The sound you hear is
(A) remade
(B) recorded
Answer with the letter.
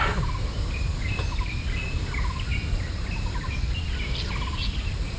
B